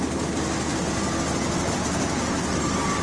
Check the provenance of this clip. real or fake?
real